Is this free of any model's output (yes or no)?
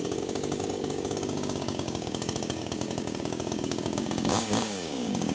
no